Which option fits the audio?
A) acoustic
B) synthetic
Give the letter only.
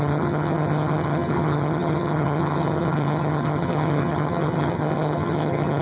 B